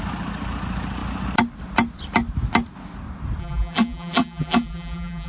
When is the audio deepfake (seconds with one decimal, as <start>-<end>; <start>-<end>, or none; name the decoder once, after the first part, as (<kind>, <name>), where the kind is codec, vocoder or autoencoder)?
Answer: 3.4-5.3 (vocoder, BigVGAN v2)